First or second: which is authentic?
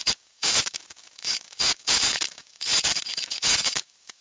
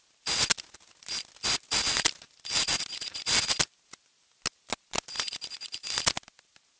second